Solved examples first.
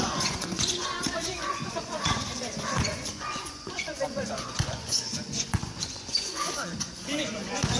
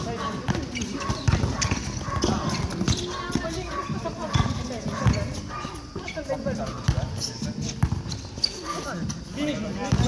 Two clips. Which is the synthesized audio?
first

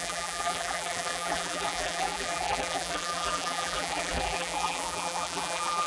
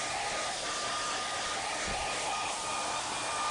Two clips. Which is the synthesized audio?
first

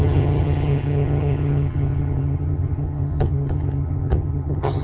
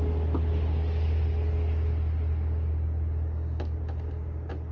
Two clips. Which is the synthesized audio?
first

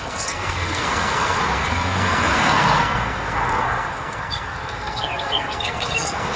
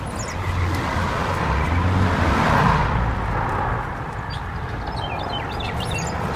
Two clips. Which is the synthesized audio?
first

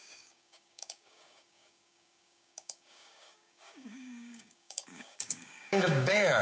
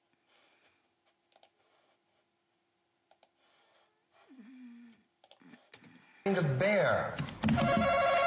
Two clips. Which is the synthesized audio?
first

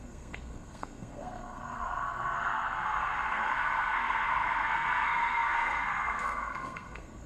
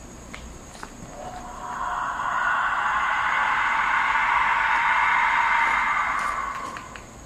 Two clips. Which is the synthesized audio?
first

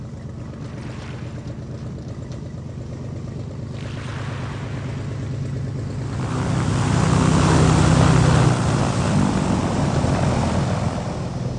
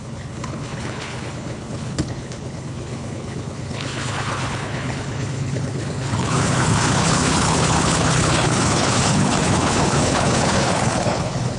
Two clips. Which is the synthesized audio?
second